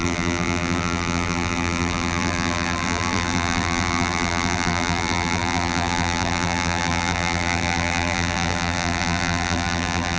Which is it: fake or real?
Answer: fake